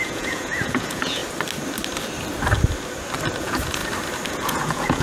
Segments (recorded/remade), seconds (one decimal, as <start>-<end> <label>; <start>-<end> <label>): 0.0-1.2 remade; 1.2-3.4 recorded; 3.4-3.8 remade; 3.8-4.3 recorded; 4.3-5.0 remade